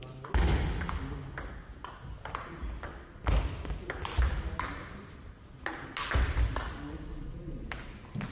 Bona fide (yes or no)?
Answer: yes